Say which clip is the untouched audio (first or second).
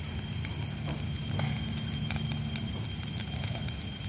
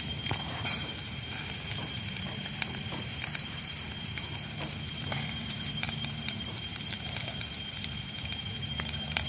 first